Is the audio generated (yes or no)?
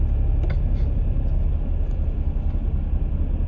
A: no